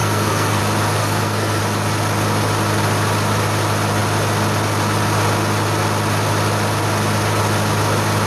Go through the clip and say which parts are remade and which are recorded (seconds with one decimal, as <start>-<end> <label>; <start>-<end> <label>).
0.0-0.6 remade; 0.6-1.0 recorded; 1.0-1.6 remade; 1.6-8.3 recorded